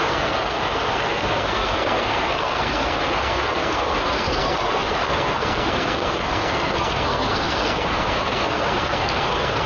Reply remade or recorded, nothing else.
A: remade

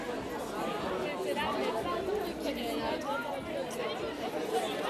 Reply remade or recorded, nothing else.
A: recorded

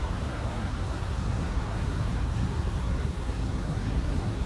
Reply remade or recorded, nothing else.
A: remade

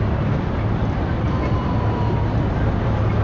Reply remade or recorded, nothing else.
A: recorded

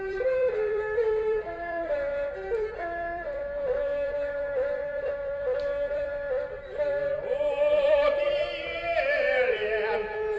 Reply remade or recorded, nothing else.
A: remade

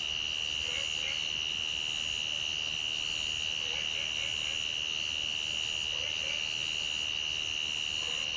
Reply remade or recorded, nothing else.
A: recorded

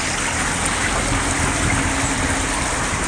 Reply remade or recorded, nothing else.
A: recorded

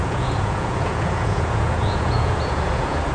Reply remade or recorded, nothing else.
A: remade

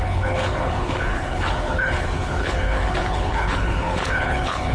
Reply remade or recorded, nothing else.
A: remade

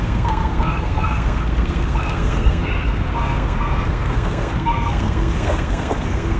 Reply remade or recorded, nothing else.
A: remade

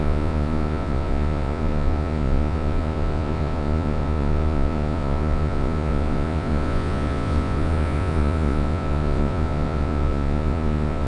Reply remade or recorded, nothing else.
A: remade